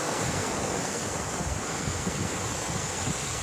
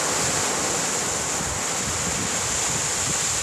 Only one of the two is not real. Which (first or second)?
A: first